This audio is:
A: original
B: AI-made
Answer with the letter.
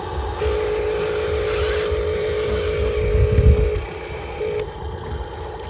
A